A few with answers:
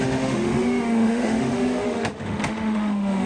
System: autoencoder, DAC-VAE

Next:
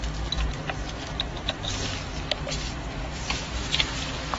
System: none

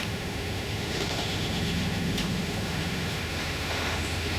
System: autoencoder, DAC-VAE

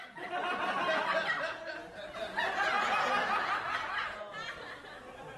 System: none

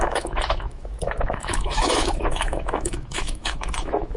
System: autoencoder, DAC-VAE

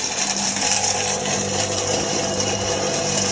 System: none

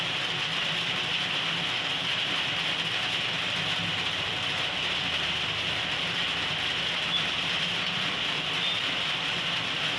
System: none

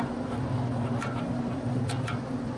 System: none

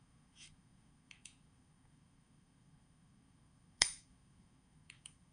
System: autoencoder, DAC-VAE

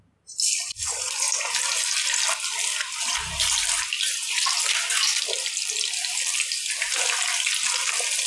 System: none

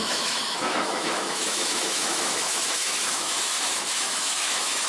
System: autoencoder, DAC-VAE